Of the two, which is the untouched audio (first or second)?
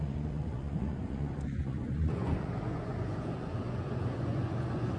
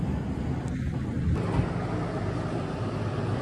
second